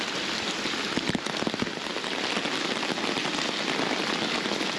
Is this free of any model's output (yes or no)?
yes